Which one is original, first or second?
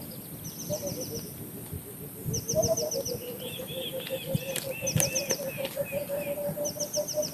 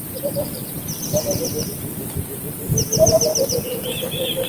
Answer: first